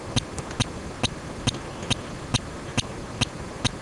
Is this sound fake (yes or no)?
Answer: no